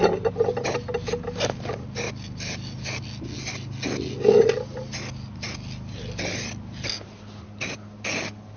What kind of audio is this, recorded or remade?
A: recorded